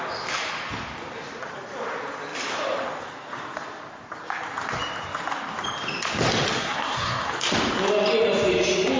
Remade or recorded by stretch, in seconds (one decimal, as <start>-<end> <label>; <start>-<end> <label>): 0.0-6.6 recorded; 6.6-7.3 remade; 7.3-9.0 recorded